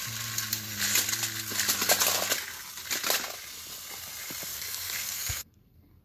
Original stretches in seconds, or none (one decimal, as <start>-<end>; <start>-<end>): 0.0-4.5